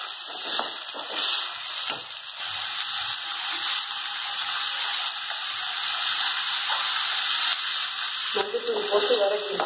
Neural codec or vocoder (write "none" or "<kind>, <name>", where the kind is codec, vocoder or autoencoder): none